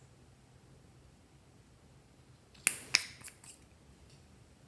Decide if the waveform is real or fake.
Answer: real